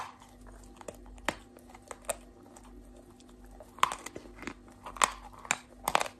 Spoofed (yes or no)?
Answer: no